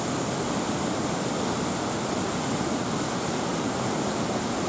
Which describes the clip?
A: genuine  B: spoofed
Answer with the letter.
A